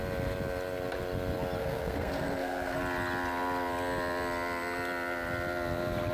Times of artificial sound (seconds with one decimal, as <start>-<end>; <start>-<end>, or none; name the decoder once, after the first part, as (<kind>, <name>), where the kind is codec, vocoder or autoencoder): 1.6-2.8 (codec, SNAC)